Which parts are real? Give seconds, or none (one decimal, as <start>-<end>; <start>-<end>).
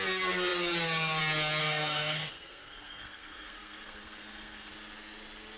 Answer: 0.0-1.6; 4.7-5.6